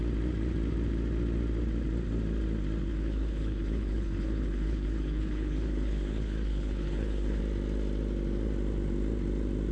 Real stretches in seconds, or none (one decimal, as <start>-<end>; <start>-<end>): 0.0-2.9; 7.4-9.7